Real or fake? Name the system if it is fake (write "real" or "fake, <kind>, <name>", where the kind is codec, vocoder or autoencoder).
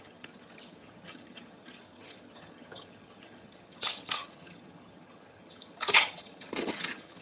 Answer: fake, vocoder, HiFi-GAN